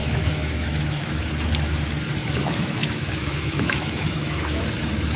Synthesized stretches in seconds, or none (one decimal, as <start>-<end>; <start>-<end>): 0.0-1.3; 2.2-4.6